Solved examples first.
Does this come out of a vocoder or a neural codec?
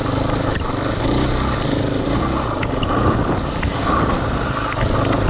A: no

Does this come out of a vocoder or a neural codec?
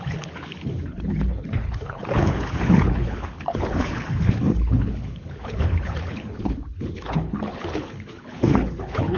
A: yes